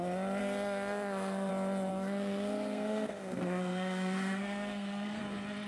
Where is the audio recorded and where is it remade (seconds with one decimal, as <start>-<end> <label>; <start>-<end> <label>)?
0.0-0.4 recorded; 0.4-1.5 remade; 1.5-1.9 recorded; 1.9-5.2 remade; 5.2-5.7 recorded